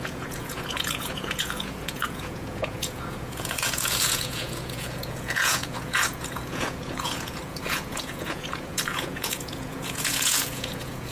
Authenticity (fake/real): fake